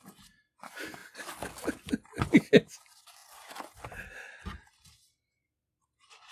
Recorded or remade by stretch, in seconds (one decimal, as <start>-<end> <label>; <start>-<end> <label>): 0.0-6.3 recorded